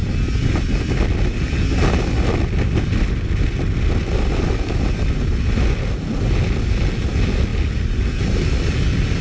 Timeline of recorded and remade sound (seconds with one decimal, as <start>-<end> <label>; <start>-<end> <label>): 0.0-9.2 recorded